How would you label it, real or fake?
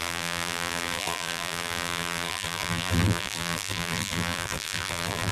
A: fake